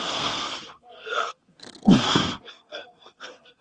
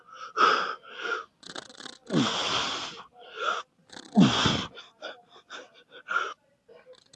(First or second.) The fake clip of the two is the first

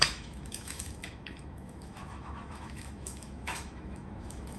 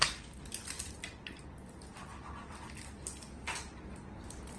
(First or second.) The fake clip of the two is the first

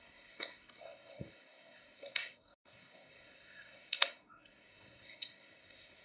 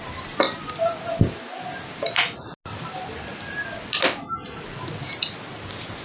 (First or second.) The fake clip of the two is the first